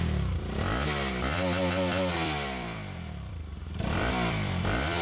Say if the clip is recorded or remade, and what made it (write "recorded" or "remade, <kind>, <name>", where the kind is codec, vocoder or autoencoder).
remade, vocoder, BigVGAN v2